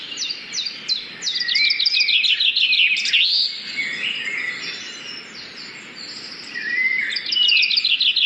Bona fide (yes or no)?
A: yes